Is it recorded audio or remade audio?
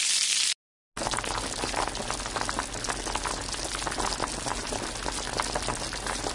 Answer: recorded